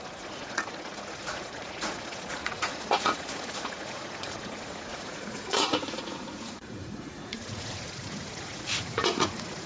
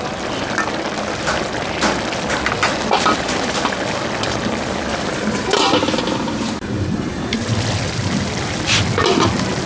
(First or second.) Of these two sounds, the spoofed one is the first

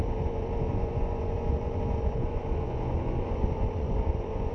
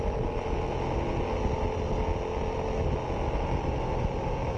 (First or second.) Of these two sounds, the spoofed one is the first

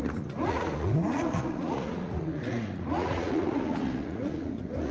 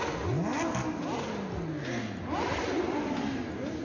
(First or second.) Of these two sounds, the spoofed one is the first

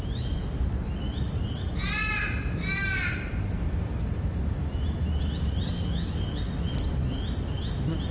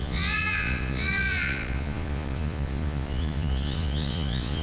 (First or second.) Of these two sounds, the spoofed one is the second